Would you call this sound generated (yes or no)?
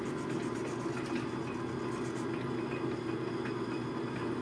no